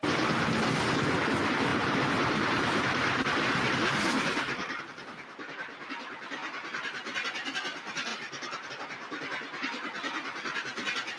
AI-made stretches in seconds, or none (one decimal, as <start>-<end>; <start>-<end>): 1.7-4.8; 8.1-8.7